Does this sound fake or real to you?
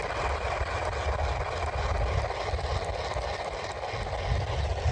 real